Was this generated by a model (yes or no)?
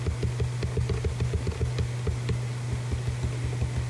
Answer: no